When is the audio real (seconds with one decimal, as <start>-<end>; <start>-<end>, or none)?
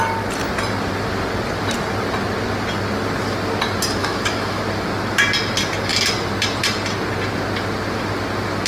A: 0.0-4.0; 4.6-8.7